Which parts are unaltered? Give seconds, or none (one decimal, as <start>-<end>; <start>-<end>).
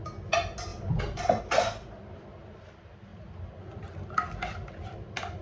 0.0-5.4